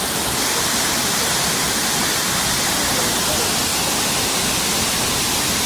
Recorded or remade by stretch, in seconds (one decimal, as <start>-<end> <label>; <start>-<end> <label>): 0.0-3.7 recorded; 3.7-4.4 remade; 4.4-5.7 recorded